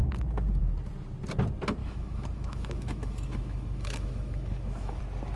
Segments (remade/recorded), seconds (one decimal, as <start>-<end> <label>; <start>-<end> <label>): 0.0-1.8 recorded; 1.8-5.0 remade; 5.0-5.4 recorded